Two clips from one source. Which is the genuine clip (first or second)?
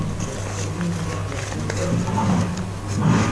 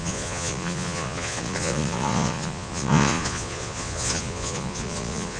first